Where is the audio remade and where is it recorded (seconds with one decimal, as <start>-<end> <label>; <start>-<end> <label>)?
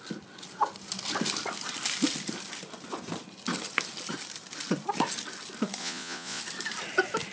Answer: 0.0-5.8 recorded; 5.8-6.4 remade; 6.4-7.3 recorded